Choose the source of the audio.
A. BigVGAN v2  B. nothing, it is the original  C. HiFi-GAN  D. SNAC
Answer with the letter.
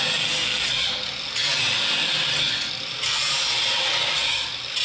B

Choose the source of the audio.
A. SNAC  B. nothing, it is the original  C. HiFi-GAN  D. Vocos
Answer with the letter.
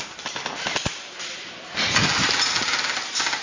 B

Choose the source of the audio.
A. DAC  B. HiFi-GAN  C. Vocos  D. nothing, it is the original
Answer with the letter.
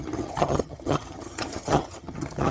B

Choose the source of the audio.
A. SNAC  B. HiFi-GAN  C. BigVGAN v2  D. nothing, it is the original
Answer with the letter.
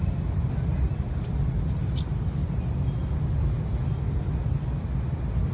D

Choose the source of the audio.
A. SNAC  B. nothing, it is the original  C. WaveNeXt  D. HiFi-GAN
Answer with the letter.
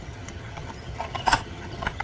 D